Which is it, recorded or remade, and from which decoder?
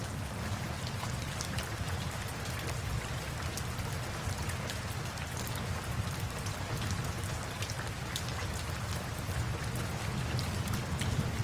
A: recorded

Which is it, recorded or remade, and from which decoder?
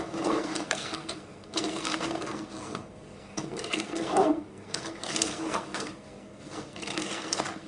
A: remade, codec, SNAC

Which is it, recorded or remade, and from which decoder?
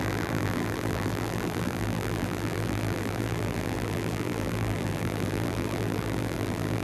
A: remade, vocoder, BigVGAN v2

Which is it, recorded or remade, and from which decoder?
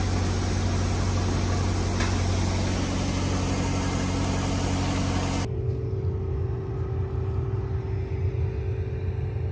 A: recorded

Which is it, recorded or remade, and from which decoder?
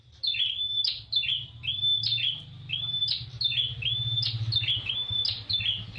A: recorded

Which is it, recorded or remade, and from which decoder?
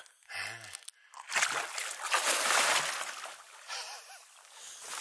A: recorded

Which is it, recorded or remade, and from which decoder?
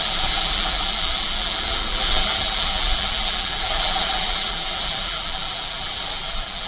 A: remade, vocoder, BigVGAN v2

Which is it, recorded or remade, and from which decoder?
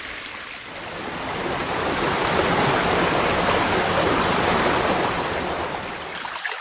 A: recorded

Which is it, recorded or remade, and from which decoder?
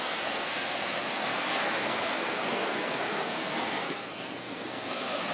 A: remade, codec, SNAC